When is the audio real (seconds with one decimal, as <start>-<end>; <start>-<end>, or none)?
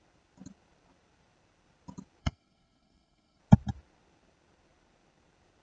0.0-2.2; 3.4-5.6